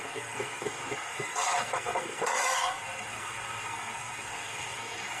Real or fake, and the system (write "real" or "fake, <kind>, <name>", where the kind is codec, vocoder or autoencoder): fake, codec, SNAC